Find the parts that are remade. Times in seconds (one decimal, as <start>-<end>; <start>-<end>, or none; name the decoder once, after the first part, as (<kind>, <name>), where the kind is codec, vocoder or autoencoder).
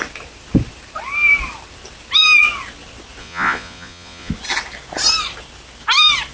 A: 3.2-4.3 (vocoder, Vocos)